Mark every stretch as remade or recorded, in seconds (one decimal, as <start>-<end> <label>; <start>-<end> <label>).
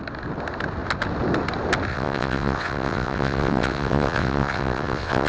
0.0-1.9 recorded; 1.9-5.3 remade